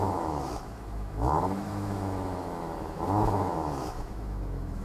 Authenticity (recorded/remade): remade